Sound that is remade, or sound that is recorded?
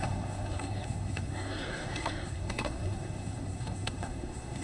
remade